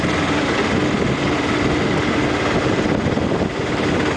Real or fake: real